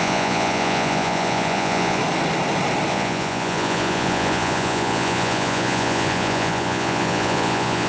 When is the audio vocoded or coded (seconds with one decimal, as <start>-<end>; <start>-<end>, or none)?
0.0-2.0; 2.9-7.9